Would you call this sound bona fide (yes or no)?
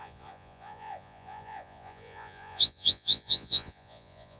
no